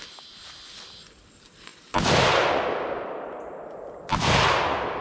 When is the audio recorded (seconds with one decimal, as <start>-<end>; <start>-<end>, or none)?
0.0-5.0